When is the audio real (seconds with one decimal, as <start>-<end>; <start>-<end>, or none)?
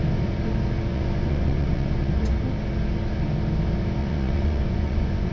0.0-0.9; 2.2-4.0